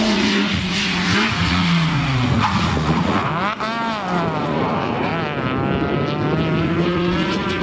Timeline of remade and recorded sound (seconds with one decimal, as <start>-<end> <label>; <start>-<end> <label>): 0.0-3.3 remade; 3.3-4.4 recorded; 4.4-5.1 remade; 5.1-6.6 recorded; 6.6-7.6 remade

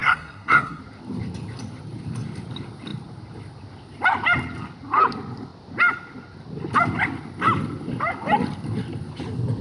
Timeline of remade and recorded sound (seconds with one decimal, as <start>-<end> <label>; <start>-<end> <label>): 0.0-0.8 remade; 0.8-9.6 recorded

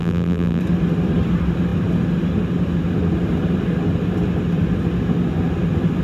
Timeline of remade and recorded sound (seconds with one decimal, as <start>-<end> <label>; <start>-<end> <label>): 0.0-0.6 remade; 0.6-6.0 recorded